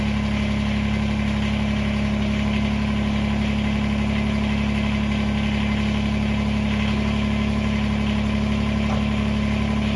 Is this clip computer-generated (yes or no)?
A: no